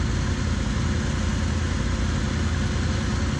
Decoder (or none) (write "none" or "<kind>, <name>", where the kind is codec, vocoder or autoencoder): none